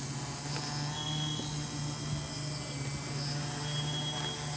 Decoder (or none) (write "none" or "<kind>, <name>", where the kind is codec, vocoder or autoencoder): none